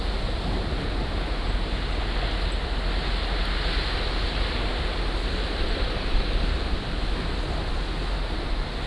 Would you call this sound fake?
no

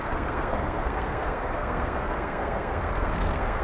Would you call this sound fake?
yes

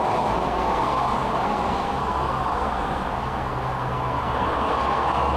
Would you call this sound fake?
yes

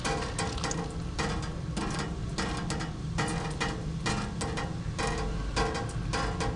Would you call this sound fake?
no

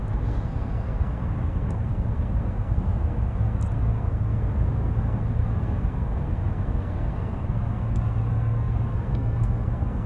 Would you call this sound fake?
yes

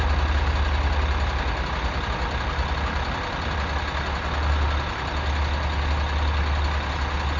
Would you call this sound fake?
no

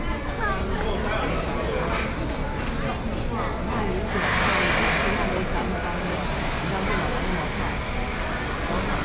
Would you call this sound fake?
no